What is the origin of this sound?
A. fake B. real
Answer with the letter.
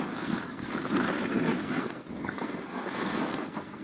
A